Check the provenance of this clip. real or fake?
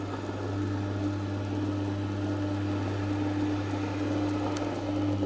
real